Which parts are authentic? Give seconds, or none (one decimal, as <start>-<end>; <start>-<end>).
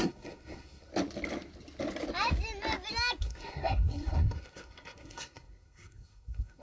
0.9-3.2